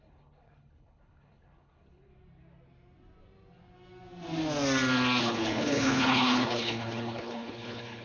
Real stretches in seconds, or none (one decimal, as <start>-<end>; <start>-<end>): 2.1-5.2